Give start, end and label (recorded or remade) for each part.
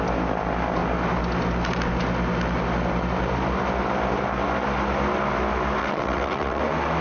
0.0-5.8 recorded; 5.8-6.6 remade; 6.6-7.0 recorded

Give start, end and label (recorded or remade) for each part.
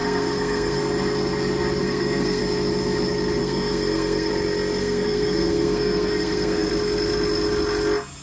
0.0-0.8 remade; 0.8-1.8 recorded; 1.8-2.4 remade; 2.4-3.4 recorded; 3.4-4.3 remade; 4.3-4.8 recorded; 4.8-6.7 remade; 6.7-8.2 recorded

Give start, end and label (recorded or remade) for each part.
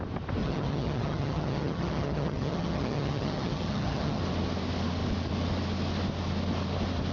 0.0-0.4 recorded; 0.4-4.2 remade; 4.2-7.1 recorded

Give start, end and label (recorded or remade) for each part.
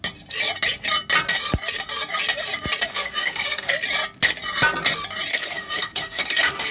0.0-2.9 recorded; 2.9-3.7 remade; 3.7-5.3 recorded; 5.3-6.7 remade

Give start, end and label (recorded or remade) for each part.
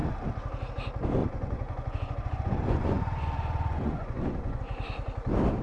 0.0-1.2 recorded; 1.2-4.6 remade; 4.6-5.6 recorded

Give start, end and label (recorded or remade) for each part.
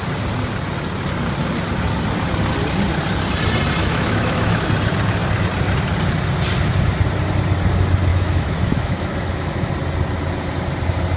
0.0-3.8 recorded; 3.8-4.7 remade; 4.7-8.1 recorded; 8.1-9.7 remade; 9.7-11.2 recorded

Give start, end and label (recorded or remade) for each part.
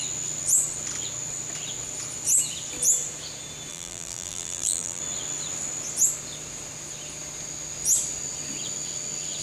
0.0-3.7 recorded; 3.7-5.0 remade; 5.0-9.4 recorded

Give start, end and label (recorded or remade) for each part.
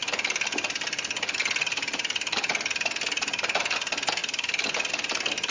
0.0-1.4 recorded; 1.4-2.5 remade; 2.5-4.2 recorded; 4.2-4.9 remade; 4.9-5.5 recorded